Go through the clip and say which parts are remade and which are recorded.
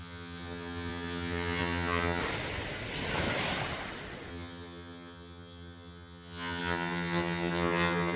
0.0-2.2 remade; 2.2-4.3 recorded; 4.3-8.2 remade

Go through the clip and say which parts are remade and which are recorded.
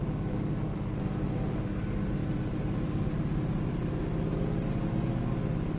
0.0-5.8 recorded